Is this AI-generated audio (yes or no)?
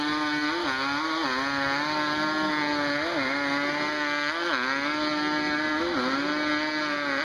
no